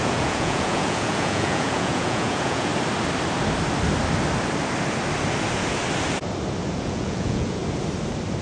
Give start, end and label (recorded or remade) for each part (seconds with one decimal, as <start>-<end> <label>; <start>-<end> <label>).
0.0-2.7 remade; 2.7-6.8 recorded; 6.8-7.6 remade; 7.6-8.4 recorded